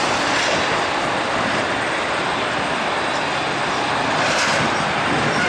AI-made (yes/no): yes